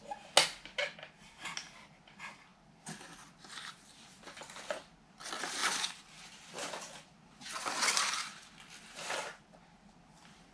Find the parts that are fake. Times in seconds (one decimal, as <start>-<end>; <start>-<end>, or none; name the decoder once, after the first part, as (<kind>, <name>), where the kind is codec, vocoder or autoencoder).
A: none